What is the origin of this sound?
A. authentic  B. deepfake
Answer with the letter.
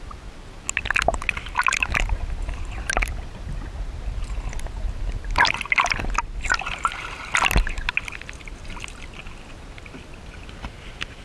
A